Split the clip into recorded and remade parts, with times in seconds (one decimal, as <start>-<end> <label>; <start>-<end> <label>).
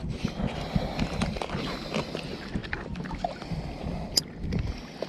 0.0-5.1 recorded